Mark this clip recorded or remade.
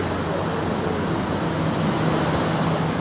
recorded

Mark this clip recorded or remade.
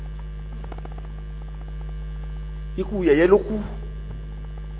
recorded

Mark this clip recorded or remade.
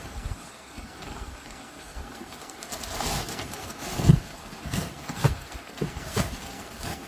remade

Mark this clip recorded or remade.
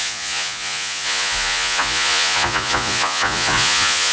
remade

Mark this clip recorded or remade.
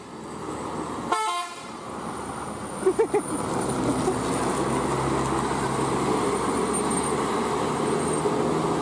recorded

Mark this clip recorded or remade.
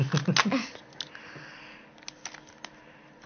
recorded